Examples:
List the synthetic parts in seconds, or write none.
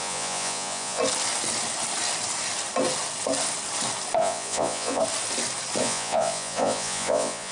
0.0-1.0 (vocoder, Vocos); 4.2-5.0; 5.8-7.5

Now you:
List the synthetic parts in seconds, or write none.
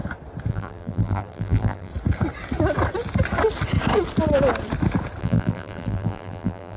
0.5-1.9 (vocoder, BigVGAN v2); 5.2-6.8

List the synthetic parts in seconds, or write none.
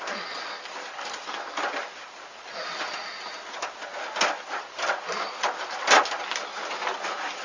none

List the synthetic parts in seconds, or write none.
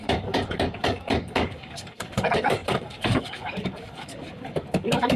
0.0-5.2 (codec, DAC)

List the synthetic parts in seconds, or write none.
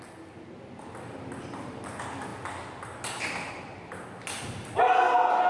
none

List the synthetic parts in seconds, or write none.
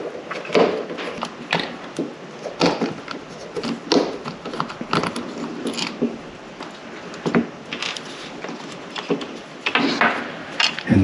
none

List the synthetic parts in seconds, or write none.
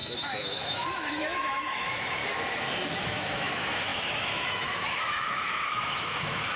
0.0-2.2 (autoencoder, DAC-VAE); 3.0-6.6